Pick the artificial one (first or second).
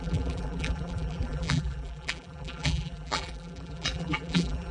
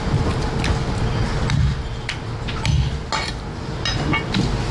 first